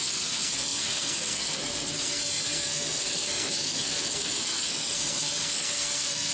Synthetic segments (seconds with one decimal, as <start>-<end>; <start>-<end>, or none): 0.0-6.3